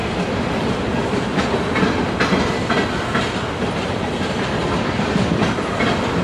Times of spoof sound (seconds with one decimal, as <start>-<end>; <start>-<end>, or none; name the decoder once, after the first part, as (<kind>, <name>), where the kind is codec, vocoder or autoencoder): none